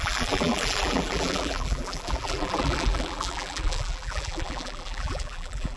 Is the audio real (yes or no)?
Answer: no